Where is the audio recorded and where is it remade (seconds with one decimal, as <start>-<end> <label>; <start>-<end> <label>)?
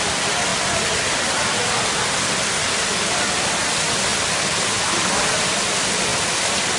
0.0-6.8 recorded